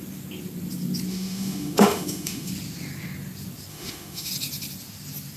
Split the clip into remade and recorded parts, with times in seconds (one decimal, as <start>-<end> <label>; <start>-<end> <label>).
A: 0.0-1.1 recorded; 1.1-2.5 remade; 2.5-3.7 recorded; 3.7-4.3 remade; 4.3-5.4 recorded